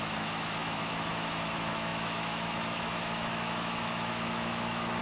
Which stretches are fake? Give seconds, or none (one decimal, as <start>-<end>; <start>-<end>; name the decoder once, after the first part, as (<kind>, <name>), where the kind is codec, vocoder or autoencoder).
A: 0.0-5.0 (autoencoder, DAC-VAE)

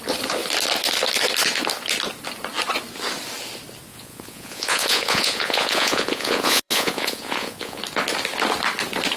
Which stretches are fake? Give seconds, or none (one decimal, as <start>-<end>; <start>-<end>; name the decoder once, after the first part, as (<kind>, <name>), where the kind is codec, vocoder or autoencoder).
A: 3.9-7.8 (vocoder, Vocos)